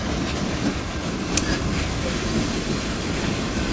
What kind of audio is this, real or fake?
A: real